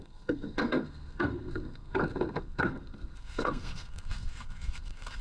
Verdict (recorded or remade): remade